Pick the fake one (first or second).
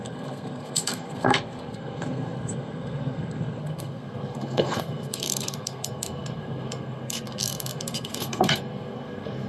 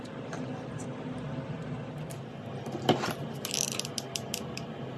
first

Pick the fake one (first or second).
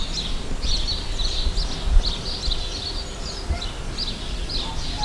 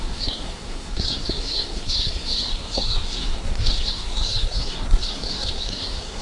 second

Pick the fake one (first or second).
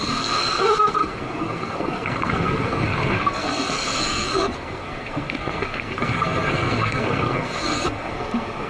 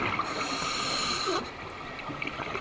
first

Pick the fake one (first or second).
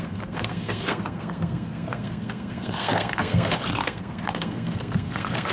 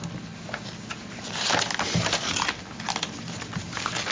first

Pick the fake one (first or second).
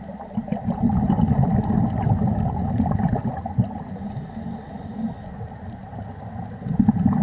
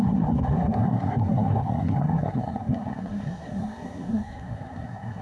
second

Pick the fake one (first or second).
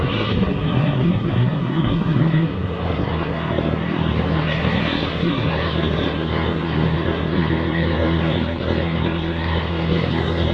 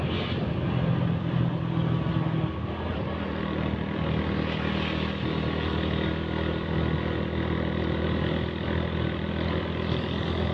first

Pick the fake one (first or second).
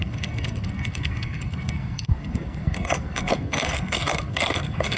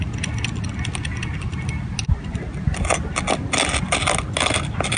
first